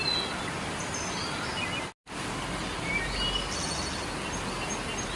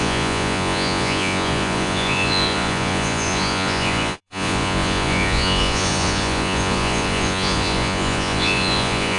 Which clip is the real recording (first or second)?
first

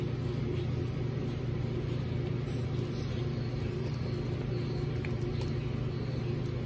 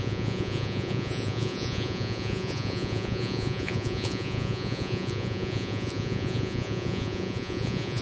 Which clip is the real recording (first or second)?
first